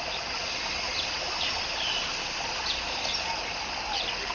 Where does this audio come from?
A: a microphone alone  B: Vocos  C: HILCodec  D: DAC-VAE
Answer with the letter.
A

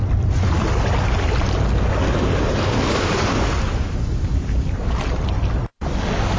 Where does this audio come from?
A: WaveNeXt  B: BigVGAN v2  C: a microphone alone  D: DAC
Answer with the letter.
C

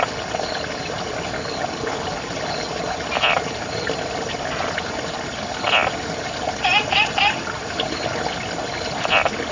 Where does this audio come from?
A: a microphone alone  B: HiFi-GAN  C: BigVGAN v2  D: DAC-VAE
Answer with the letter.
A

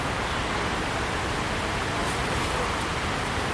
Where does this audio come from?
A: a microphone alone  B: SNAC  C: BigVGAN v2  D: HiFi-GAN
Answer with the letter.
A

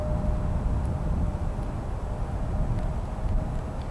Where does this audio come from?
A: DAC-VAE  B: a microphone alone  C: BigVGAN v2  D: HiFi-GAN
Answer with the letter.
B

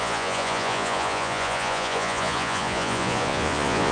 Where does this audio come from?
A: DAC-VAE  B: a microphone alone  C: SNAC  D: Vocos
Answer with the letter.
D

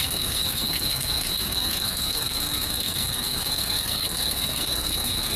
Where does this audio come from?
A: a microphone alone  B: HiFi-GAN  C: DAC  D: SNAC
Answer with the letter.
D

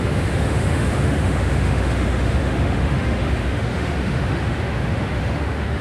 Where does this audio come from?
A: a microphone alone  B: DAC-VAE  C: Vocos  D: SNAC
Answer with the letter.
B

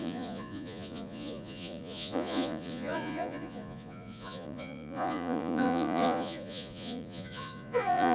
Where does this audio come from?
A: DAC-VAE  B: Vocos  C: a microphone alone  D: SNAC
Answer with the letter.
B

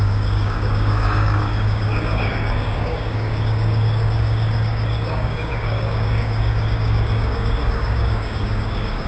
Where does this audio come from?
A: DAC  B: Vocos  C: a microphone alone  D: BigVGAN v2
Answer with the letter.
A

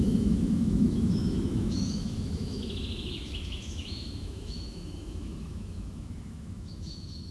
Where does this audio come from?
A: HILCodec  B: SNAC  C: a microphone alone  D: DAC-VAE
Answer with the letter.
D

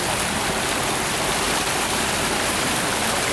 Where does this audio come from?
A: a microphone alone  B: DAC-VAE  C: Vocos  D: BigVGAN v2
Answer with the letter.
A